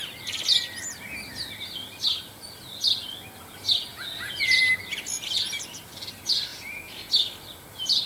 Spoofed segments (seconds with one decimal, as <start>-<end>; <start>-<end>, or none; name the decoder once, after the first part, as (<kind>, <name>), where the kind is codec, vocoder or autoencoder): 3.9-4.6 (vocoder, Vocos); 6.5-7.1